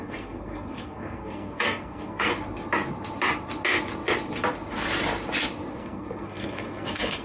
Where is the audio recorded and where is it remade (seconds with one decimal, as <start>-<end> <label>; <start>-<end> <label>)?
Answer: 0.0-2.3 remade; 2.3-5.7 recorded; 5.7-7.2 remade